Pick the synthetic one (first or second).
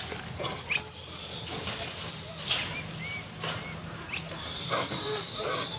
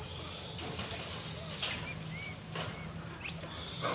second